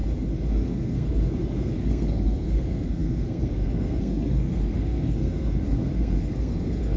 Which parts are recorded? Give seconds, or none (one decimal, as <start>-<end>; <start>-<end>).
0.0-0.5